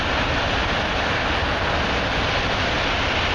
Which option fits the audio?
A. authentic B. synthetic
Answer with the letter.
A